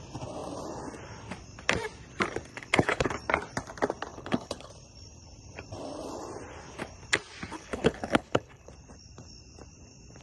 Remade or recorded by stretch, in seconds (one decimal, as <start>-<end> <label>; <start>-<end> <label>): 0.0-2.5 recorded; 2.5-3.1 remade; 3.1-4.1 recorded; 4.1-4.7 remade; 4.7-7.5 recorded; 7.5-8.7 remade; 8.7-10.2 recorded